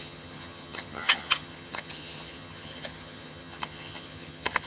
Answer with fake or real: fake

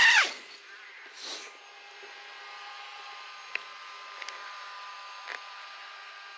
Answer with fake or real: real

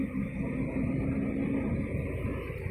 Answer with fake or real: real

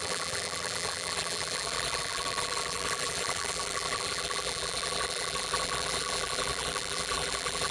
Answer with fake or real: fake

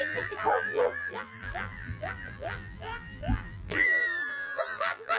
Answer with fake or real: fake